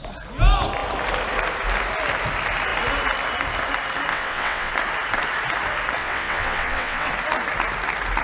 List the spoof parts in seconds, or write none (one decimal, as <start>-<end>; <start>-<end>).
4.1-4.7; 6.0-7.1

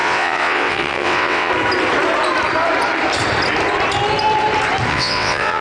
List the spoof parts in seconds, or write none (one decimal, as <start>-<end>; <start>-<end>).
0.0-1.5; 4.9-5.6

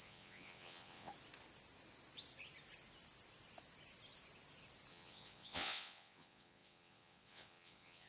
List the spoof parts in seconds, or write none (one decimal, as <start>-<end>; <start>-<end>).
0.0-1.1; 4.9-8.1

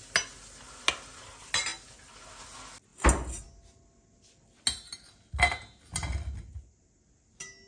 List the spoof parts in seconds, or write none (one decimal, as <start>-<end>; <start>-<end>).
none